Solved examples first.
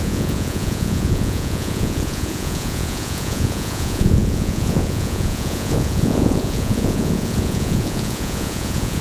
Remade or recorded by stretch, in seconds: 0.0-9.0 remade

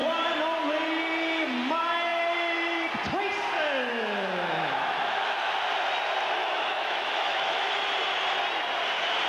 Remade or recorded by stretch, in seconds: 0.0-3.9 recorded; 3.9-5.5 remade; 5.5-6.4 recorded; 6.4-7.6 remade; 7.6-9.3 recorded

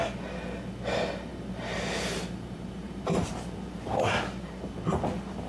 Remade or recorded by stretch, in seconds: 0.0-1.3 recorded; 1.3-3.3 remade; 3.3-5.5 recorded

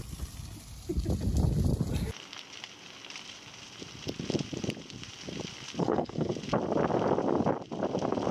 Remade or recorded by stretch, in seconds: 0.0-5.8 recorded; 5.8-6.3 remade; 6.3-8.3 recorded

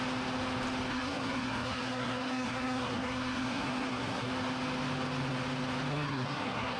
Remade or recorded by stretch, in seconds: 0.0-0.9 recorded; 0.9-4.3 remade; 4.3-5.9 recorded; 5.9-6.8 remade